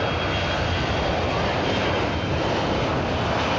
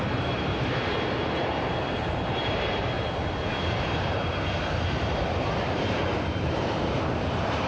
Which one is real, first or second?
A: first